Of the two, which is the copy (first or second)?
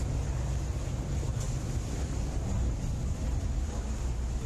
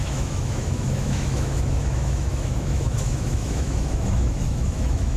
second